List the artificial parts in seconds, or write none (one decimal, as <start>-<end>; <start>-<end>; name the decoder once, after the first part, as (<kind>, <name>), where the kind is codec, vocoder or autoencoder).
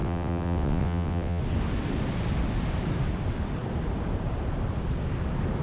0.0-1.4 (vocoder, WaveNeXt)